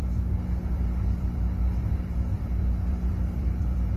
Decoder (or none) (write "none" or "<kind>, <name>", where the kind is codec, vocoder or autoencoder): vocoder, BigVGAN v2